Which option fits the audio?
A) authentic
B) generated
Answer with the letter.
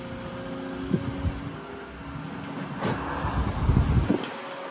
A